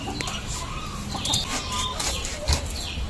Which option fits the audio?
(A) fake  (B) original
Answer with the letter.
B